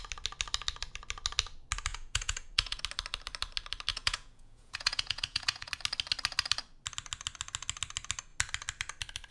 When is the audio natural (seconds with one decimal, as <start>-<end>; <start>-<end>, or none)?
0.0-1.9; 2.8-3.9; 5.7-9.3